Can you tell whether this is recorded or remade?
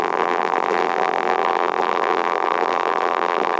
remade